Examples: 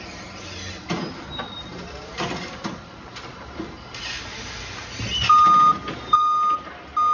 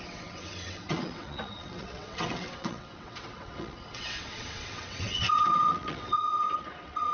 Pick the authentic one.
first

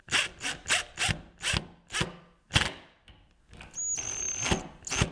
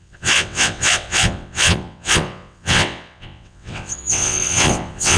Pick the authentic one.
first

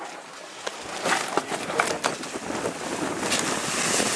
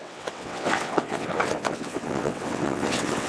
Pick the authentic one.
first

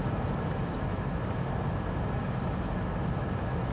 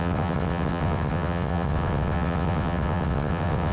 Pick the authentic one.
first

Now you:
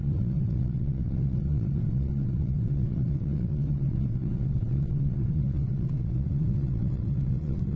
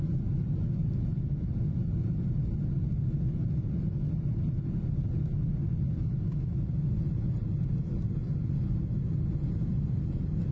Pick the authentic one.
second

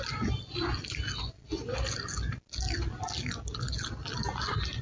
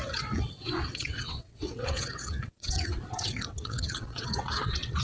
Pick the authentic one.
first